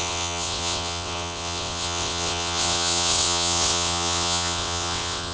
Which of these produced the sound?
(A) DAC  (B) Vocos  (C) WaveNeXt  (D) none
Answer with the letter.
C